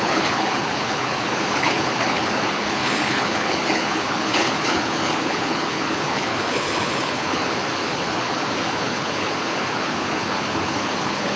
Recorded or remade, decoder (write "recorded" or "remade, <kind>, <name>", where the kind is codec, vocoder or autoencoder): remade, codec, HILCodec